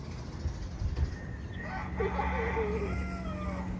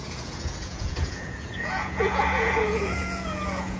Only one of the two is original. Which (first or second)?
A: first